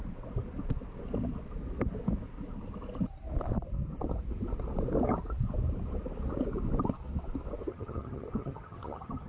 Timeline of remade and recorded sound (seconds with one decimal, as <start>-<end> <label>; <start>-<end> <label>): 0.0-7.7 recorded; 7.7-9.3 remade